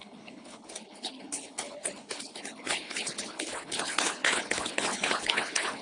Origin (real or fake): fake